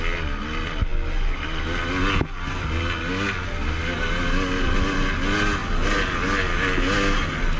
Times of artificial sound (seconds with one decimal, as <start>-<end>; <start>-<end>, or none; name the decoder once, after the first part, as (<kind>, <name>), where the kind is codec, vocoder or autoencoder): none